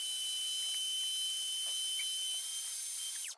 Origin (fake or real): real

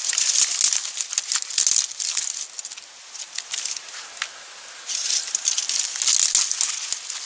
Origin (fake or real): real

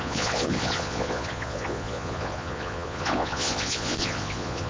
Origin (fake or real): fake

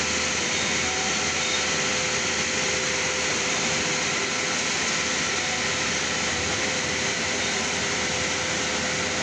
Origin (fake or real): real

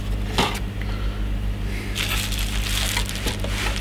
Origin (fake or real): real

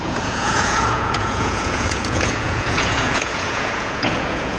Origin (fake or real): fake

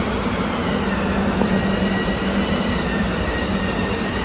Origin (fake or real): real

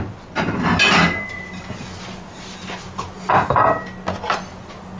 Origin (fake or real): real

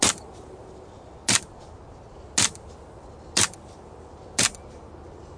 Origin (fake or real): real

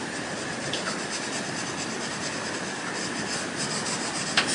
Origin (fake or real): real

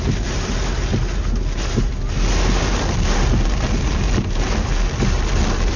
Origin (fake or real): real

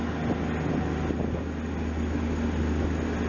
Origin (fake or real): real